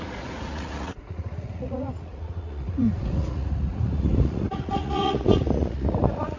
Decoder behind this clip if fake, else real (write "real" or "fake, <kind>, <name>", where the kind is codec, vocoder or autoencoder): fake, vocoder, Vocos